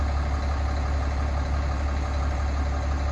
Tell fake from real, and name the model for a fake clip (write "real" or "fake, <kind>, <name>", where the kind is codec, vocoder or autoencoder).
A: real